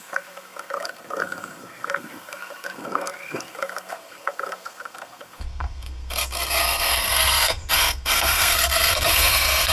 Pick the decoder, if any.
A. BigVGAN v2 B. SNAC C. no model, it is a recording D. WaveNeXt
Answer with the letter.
B